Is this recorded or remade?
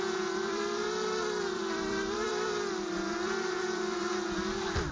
remade